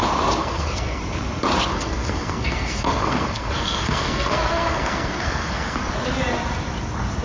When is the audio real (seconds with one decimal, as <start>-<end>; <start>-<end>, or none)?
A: 0.0-0.4; 1.0-1.7; 5.9-7.2